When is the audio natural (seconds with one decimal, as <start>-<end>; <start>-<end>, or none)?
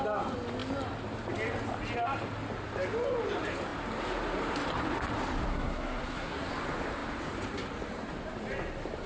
0.0-5.5; 6.5-9.1